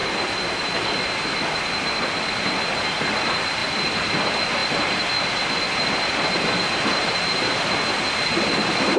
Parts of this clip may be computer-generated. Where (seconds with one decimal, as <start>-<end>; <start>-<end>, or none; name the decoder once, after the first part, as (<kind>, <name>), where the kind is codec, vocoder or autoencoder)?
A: none